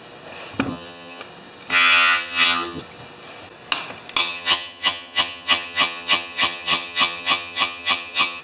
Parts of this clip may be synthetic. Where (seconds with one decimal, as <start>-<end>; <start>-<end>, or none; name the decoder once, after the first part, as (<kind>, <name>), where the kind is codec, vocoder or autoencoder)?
0.7-1.2 (vocoder, HiFi-GAN); 1.7-2.8; 4.2-8.4

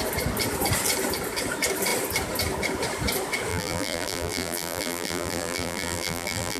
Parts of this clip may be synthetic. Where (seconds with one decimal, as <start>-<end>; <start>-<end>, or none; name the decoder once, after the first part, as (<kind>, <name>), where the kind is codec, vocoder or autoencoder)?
3.5-6.6 (vocoder, BigVGAN v2)